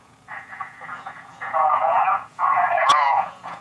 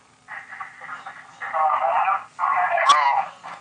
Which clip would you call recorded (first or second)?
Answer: second